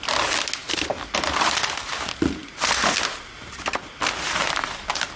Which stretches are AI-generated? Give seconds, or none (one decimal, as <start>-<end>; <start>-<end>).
none